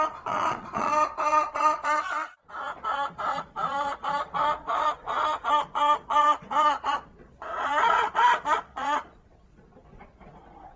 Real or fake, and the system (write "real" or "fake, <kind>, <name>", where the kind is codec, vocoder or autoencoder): fake, vocoder, Vocos